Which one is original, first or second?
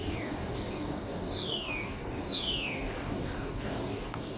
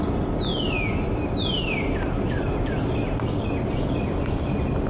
second